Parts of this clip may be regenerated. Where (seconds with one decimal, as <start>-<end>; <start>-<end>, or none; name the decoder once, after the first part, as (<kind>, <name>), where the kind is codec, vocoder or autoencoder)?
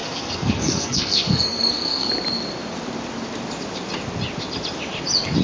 0.0-2.1 (codec, SNAC)